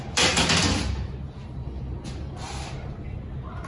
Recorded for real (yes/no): yes